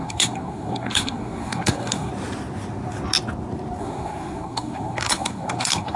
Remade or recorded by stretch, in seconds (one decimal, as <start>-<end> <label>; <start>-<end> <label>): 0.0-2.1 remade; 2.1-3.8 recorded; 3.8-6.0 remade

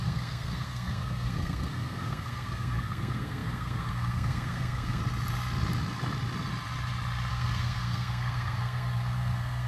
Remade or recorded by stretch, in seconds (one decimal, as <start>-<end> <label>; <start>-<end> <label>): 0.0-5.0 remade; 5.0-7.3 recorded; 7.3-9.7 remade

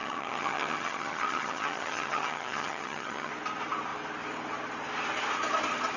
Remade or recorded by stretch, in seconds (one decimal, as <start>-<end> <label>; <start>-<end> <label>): 0.0-3.3 remade; 3.3-6.0 recorded

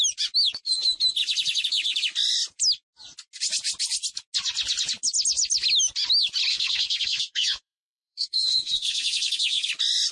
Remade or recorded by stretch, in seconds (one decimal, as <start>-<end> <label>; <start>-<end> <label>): 0.0-6.5 recorded; 6.5-9.7 remade; 9.7-10.1 recorded